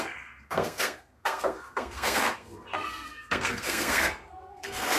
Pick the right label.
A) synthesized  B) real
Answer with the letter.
A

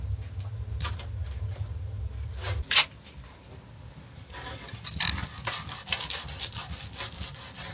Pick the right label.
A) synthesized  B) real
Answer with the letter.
B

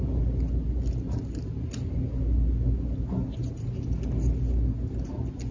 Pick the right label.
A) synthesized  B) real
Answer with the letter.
B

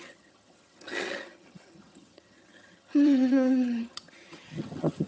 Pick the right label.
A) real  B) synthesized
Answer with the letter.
B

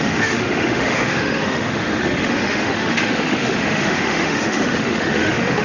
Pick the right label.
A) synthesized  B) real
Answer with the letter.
A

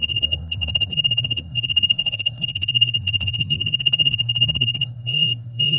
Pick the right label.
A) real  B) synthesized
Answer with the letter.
B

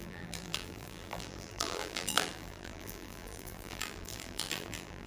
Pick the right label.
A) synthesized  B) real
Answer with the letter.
A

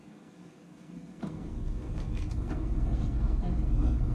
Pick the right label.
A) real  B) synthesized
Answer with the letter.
B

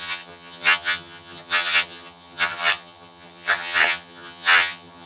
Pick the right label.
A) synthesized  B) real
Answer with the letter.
A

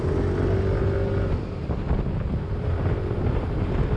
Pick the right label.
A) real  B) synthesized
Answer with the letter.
A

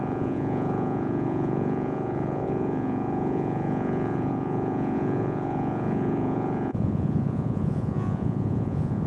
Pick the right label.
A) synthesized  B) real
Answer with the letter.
A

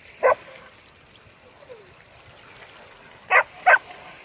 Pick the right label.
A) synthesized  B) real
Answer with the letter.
B